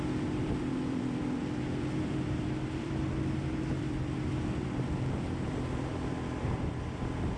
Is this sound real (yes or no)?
no